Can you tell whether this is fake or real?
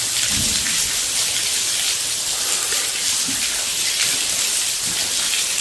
real